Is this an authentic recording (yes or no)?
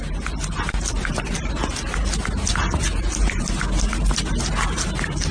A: yes